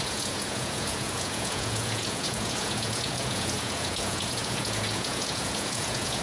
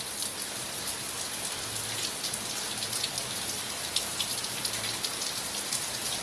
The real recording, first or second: second